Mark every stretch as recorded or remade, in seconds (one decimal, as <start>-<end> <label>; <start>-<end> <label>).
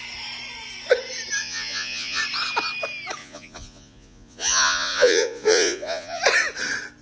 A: 0.0-1.4 recorded; 1.4-2.2 remade; 2.2-3.2 recorded; 3.2-6.2 remade; 6.2-7.0 recorded